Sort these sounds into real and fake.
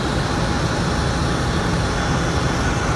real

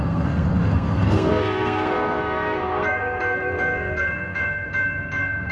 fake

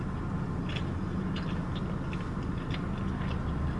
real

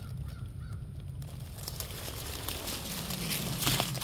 real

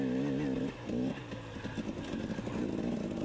real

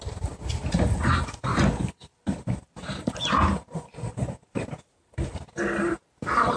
real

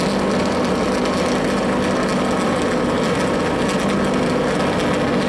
real